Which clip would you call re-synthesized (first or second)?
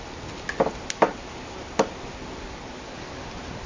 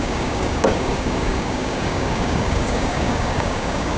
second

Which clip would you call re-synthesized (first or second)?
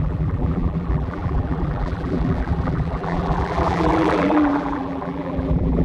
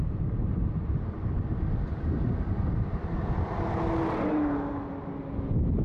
first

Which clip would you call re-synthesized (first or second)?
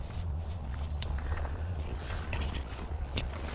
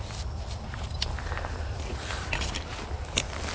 first